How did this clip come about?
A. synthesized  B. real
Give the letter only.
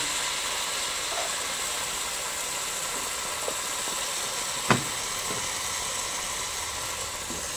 B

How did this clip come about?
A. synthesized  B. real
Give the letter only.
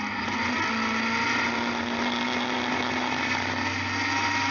B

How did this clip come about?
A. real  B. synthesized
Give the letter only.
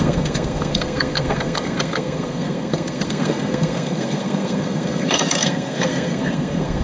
B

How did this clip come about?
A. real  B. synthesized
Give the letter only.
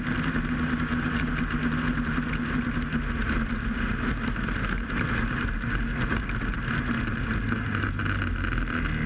A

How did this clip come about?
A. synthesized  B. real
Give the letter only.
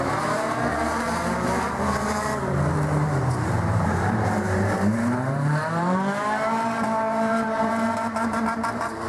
A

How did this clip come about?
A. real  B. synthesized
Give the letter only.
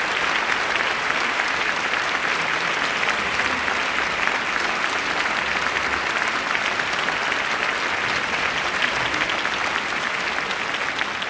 A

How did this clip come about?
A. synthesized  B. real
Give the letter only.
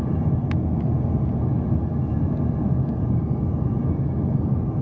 B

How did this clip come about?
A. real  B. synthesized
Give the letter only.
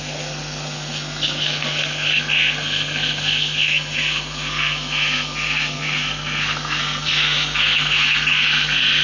B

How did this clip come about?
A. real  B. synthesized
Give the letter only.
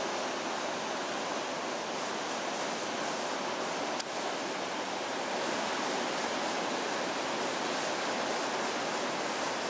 A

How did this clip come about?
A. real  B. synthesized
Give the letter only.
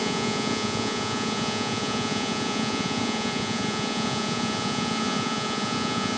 B